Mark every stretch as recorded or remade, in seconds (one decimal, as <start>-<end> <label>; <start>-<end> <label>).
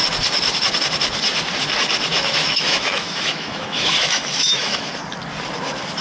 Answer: 0.0-2.1 recorded; 2.1-4.9 remade; 4.9-6.0 recorded